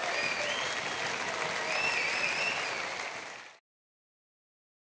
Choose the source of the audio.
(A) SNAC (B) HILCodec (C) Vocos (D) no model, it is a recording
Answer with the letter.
D